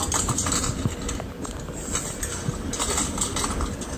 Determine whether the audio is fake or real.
real